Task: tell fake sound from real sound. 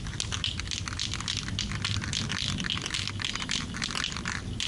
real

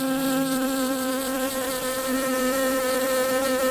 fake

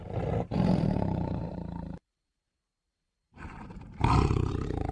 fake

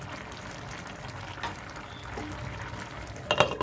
real